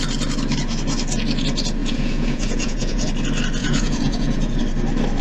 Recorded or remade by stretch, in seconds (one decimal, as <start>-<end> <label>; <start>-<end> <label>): 0.0-1.8 recorded; 1.8-3.1 remade; 3.1-3.6 recorded; 3.6-4.6 remade; 4.6-5.2 recorded